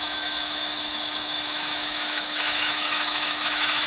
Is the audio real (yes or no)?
no